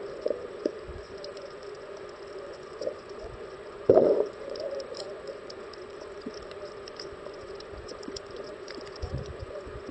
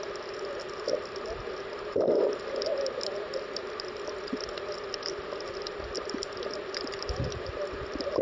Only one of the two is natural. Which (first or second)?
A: second